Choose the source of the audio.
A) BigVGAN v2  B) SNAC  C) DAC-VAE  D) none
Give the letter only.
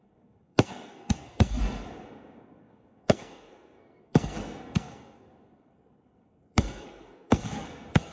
B